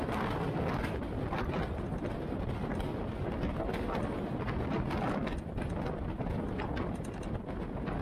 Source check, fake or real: real